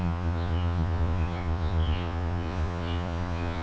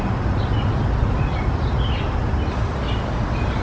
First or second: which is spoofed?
first